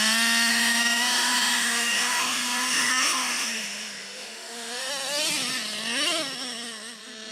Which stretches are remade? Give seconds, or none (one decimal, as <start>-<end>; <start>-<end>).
0.5-4.9